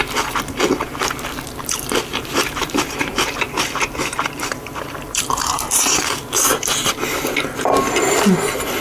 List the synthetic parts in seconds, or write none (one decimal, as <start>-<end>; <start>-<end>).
2.1-5.6